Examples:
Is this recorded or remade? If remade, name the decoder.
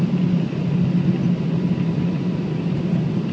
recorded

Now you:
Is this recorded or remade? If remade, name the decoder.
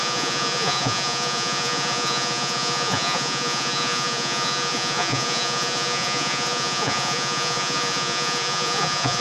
remade, vocoder, Vocos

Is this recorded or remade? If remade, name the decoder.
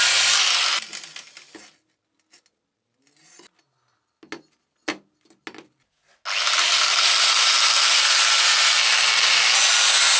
recorded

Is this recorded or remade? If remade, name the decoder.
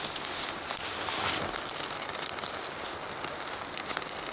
recorded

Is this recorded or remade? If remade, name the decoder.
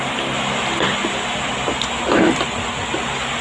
recorded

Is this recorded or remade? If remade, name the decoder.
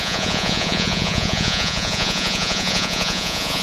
remade, vocoder, Vocos